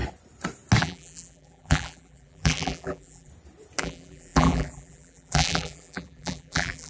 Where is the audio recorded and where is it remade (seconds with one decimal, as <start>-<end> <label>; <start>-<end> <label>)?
0.0-0.8 recorded; 0.8-3.3 remade; 3.3-3.8 recorded; 3.8-6.9 remade